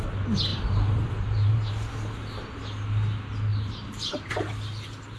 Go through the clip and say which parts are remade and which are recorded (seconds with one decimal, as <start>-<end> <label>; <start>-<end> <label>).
0.0-0.5 recorded; 0.5-1.7 remade; 1.7-3.5 recorded; 3.5-4.5 remade; 4.5-5.2 recorded